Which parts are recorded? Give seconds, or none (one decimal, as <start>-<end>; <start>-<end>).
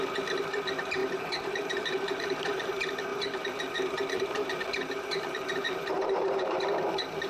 0.0-1.0; 2.7-3.1; 6.6-7.3